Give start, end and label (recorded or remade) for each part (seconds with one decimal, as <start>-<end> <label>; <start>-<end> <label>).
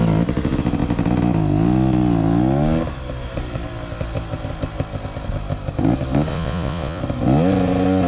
0.0-6.3 recorded; 6.3-7.0 remade; 7.0-8.1 recorded